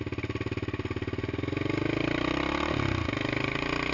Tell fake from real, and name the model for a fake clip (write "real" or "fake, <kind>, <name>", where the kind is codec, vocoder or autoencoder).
real